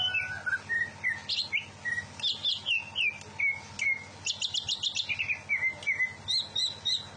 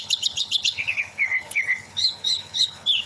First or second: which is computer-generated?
second